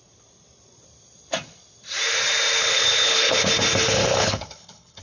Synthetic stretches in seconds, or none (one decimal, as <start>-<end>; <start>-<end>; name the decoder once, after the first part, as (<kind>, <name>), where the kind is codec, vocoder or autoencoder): 2.6-3.5 (codec, HILCodec); 4.0-5.0